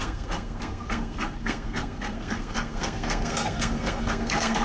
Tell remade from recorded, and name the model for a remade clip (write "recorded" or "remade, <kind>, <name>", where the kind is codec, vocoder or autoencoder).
remade, codec, SNAC